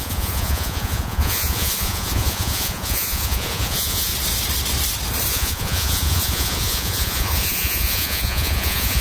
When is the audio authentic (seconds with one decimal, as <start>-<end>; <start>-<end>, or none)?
4.1-5.3